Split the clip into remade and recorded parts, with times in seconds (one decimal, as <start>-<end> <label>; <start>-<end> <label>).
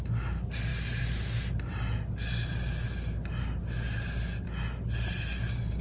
0.0-5.8 recorded